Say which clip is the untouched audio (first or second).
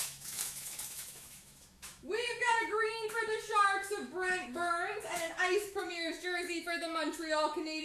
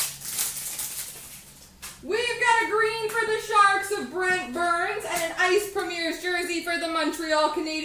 second